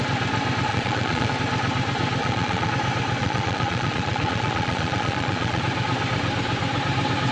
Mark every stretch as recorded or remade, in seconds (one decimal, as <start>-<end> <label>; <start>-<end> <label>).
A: 0.0-0.7 recorded; 0.7-1.3 remade; 1.3-2.2 recorded; 2.2-2.7 remade; 2.7-3.2 recorded; 3.2-5.6 remade; 5.6-7.3 recorded